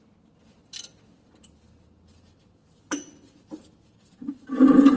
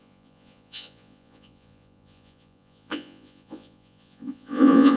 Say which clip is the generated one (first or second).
second